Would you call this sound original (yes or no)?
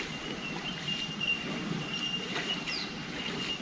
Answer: yes